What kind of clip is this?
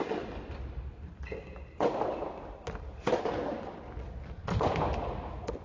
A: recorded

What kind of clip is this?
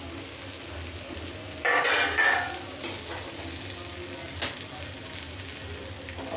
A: recorded